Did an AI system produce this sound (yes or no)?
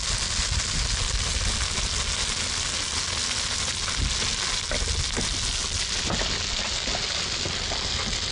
no